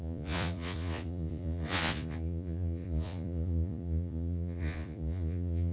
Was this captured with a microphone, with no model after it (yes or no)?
no